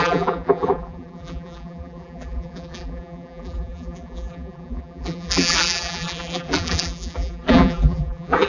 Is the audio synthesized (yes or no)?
yes